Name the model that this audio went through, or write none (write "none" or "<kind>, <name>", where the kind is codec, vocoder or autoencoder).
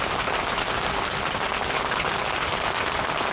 none